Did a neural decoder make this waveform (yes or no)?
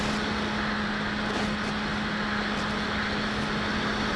no